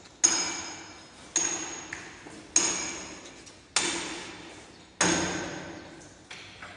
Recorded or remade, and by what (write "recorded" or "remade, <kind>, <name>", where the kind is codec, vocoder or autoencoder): recorded